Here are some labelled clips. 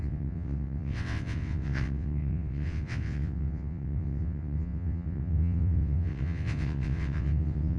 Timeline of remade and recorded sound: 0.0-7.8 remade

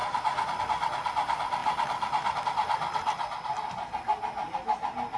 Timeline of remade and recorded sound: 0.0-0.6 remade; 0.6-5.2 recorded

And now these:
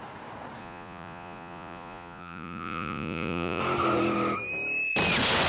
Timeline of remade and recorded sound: 0.0-0.6 recorded; 0.6-3.6 remade; 3.6-5.5 recorded

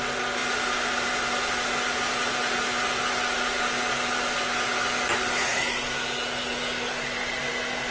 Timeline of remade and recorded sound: 0.0-0.4 recorded; 0.4-2.2 remade; 2.2-7.9 recorded

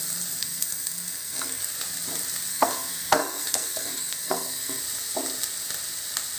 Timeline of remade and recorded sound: 0.0-0.4 recorded; 0.4-1.6 remade; 1.6-2.5 recorded; 2.5-4.8 remade; 4.8-6.4 recorded

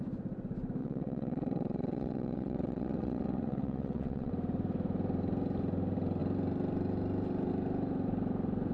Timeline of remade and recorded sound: 0.0-0.8 recorded; 0.8-4.3 remade; 4.3-8.7 recorded

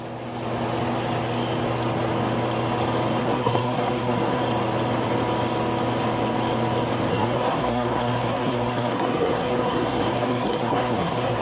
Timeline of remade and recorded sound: 0.0-3.2 recorded; 3.2-4.4 remade; 4.4-7.1 recorded; 7.1-11.4 remade

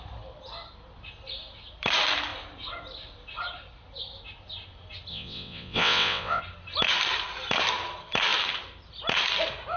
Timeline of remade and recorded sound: 0.0-5.1 recorded; 5.1-6.4 remade; 6.4-9.8 recorded